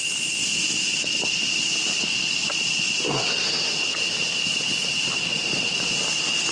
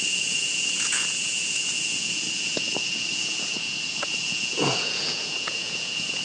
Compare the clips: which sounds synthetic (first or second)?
second